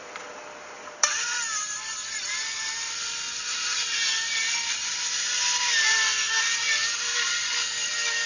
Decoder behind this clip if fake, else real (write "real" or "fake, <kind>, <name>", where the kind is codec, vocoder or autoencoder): fake, vocoder, BigVGAN v2